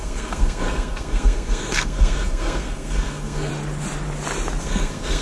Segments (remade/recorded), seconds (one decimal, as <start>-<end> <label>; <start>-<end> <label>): 0.0-3.5 remade; 3.5-4.6 recorded; 4.6-5.2 remade